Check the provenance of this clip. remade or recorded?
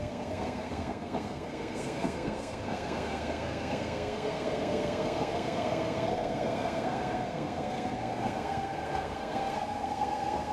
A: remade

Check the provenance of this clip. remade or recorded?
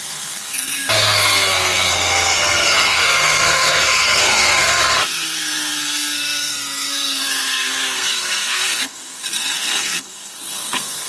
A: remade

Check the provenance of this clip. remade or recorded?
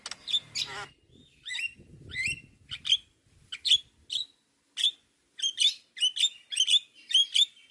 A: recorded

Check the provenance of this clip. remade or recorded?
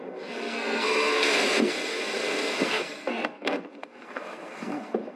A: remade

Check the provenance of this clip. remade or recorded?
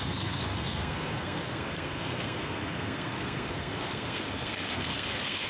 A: remade